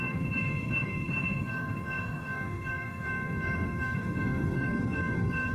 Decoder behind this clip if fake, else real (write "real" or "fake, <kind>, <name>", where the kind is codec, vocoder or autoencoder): fake, autoencoder, DAC-VAE